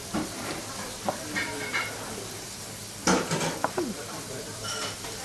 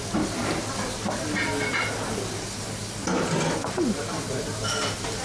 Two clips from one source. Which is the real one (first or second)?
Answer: second